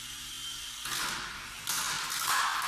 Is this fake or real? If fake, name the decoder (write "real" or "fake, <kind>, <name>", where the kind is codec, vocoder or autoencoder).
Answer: real